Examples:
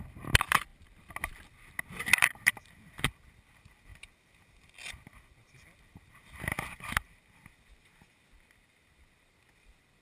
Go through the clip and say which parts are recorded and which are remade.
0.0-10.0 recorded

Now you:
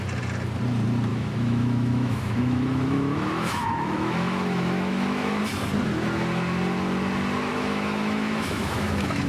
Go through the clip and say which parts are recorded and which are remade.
0.0-1.1 recorded; 1.1-5.4 remade; 5.4-7.5 recorded; 7.5-9.3 remade

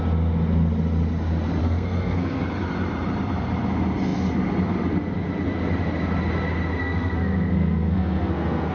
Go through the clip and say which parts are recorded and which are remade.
0.0-1.6 recorded; 1.6-2.4 remade; 2.4-6.8 recorded; 6.8-8.7 remade

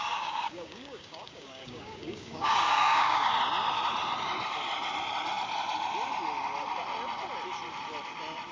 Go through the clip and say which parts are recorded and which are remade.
0.0-3.3 remade; 3.3-8.5 recorded

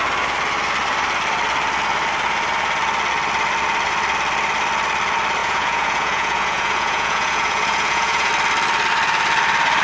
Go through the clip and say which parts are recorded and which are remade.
0.0-5.4 recorded; 5.4-8.3 remade; 8.3-9.8 recorded

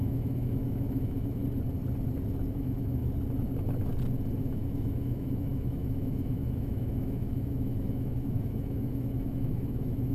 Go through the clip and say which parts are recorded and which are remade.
0.0-1.4 remade; 1.4-2.5 recorded; 2.5-3.0 remade; 3.0-4.4 recorded; 4.4-10.1 remade

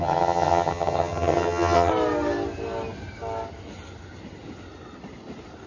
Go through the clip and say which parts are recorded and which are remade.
0.0-1.9 remade; 1.9-5.7 recorded

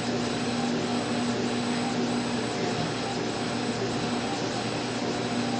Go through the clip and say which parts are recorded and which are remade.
0.0-5.6 recorded